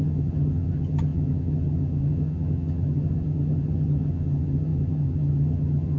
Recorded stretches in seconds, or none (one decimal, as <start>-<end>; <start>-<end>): none